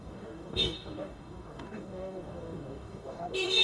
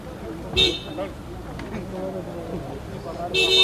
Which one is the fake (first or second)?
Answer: first